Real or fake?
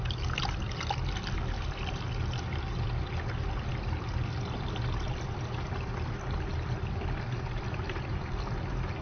real